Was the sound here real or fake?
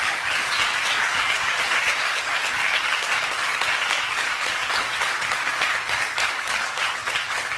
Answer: fake